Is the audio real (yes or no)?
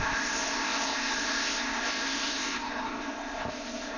no